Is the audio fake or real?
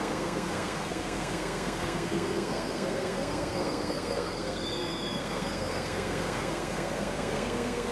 fake